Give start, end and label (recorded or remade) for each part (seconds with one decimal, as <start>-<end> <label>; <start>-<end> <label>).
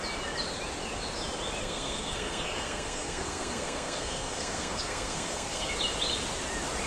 0.0-1.6 recorded; 1.6-5.7 remade; 5.7-6.9 recorded